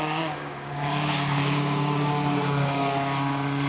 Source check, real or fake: fake